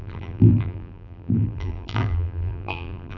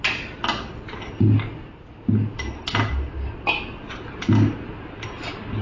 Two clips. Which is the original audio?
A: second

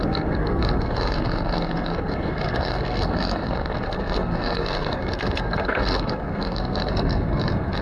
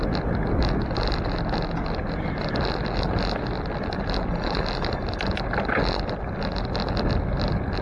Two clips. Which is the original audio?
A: second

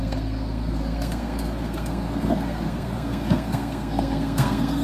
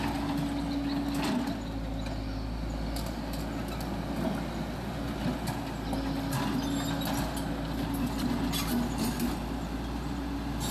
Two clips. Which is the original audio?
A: second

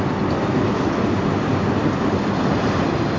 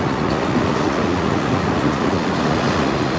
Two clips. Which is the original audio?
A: first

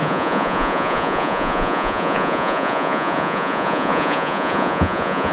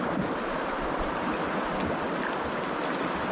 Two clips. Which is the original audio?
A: second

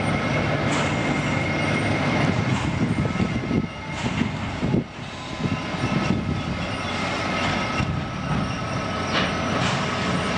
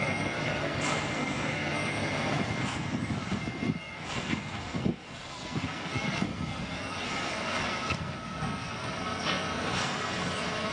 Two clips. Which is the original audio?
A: first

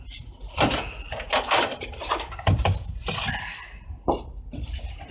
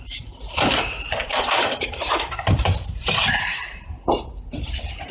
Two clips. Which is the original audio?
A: first